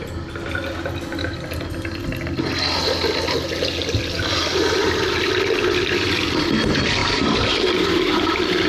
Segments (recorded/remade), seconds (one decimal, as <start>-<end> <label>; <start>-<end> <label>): 0.0-7.0 recorded; 7.0-8.7 remade